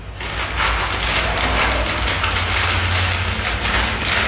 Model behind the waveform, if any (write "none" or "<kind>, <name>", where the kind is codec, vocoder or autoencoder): none